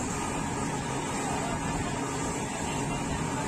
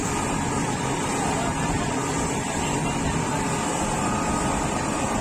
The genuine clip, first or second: first